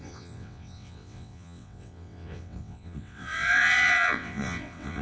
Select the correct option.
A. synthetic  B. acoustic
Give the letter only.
A